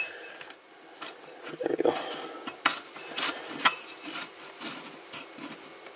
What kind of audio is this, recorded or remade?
recorded